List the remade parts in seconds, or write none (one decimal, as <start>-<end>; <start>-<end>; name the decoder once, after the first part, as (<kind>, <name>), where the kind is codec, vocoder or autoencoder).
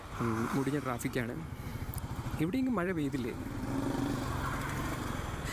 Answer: 1.7-3.7 (vocoder, BigVGAN v2)